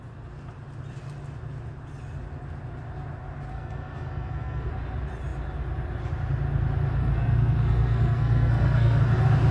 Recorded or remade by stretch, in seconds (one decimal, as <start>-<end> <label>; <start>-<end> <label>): 0.0-3.5 recorded; 3.5-4.7 remade; 4.7-7.0 recorded; 7.0-9.0 remade; 9.0-9.5 recorded

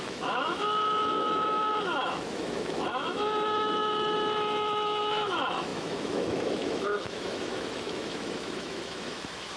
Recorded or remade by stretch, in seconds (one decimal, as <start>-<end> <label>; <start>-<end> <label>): 0.0-9.6 remade

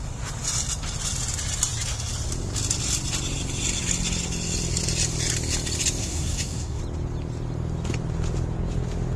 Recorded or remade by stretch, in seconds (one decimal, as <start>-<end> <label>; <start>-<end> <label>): 0.0-6.0 recorded; 6.0-6.8 remade; 6.8-9.2 recorded

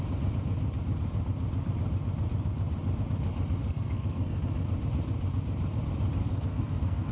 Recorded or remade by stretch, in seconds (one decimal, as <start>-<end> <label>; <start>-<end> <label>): 0.0-3.6 recorded; 3.6-4.4 remade; 4.4-6.2 recorded; 6.2-7.1 remade

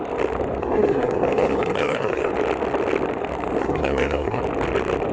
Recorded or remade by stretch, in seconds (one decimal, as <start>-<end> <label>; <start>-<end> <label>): 0.0-0.6 recorded; 0.6-2.3 remade; 2.3-3.6 recorded; 3.6-4.4 remade; 4.4-5.1 recorded

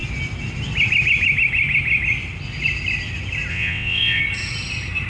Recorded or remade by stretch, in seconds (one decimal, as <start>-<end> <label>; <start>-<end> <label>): 0.0-3.5 recorded; 3.5-4.2 remade; 4.2-5.1 recorded